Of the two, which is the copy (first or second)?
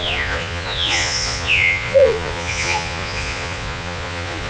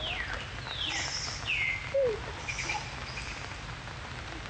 first